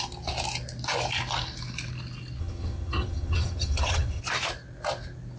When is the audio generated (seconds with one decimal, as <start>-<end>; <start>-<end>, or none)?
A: 2.4-4.2